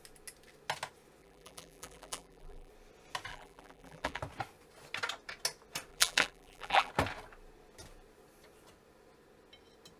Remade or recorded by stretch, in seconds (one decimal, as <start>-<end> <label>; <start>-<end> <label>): 0.0-1.2 recorded; 1.2-2.7 remade; 2.7-3.3 recorded; 3.3-4.2 remade; 4.2-5.9 recorded; 5.9-6.9 remade; 6.9-10.0 recorded